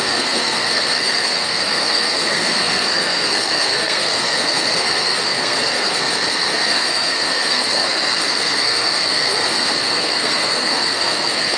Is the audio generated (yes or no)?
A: yes